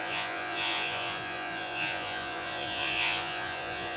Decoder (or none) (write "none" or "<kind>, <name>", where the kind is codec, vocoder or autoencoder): vocoder, Vocos